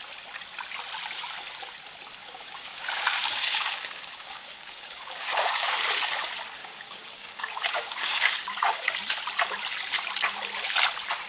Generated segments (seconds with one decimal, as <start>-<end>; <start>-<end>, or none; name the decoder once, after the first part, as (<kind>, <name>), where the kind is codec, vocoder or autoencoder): 2.2-5.7 (codec, DAC); 6.6-9.0